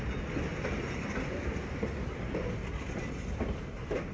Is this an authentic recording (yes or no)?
yes